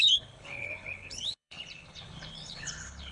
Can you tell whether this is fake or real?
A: fake